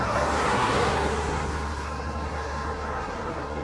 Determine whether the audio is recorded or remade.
remade